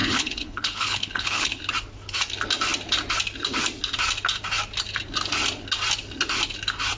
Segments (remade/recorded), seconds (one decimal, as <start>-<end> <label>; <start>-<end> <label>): 0.0-1.6 remade; 1.6-7.0 recorded